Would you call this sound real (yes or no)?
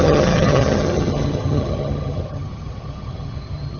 no